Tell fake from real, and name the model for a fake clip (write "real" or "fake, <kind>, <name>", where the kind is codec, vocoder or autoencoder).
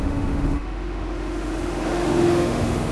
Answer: fake, autoencoder, DAC-VAE